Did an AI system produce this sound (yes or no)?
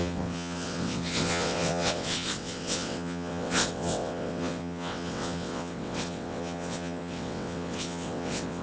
yes